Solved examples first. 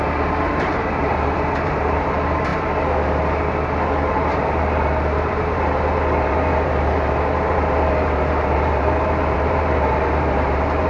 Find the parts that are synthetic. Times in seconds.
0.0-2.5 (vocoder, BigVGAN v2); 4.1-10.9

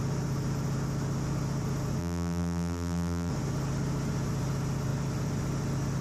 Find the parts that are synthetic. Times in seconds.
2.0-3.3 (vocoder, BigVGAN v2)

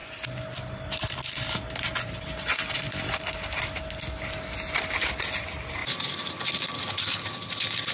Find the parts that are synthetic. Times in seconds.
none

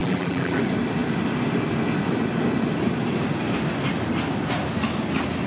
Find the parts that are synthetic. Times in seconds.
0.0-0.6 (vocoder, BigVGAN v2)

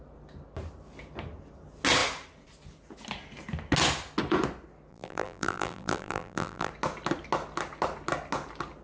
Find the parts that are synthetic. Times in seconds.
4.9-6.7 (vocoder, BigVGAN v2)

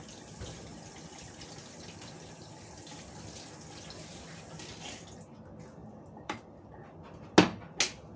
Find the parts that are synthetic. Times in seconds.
1.6-2.7 (vocoder, BigVGAN v2); 5.8-6.6

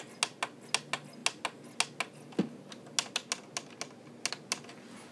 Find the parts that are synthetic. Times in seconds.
none